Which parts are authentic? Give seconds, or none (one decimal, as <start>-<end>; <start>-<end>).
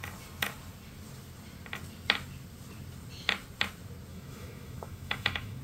0.0-4.1